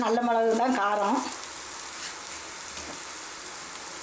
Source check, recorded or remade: recorded